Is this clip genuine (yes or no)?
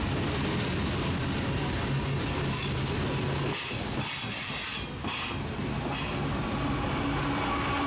yes